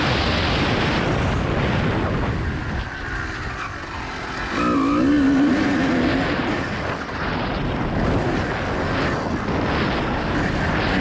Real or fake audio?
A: real